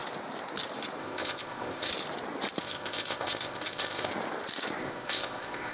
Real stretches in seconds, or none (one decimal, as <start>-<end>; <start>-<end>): 0.0-1.0; 1.9-2.6; 4.1-4.8

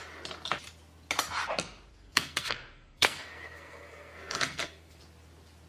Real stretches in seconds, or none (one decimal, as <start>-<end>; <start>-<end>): 0.0-1.9; 5.0-5.7

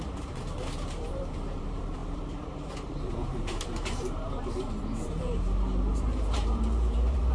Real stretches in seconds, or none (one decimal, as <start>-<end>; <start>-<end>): none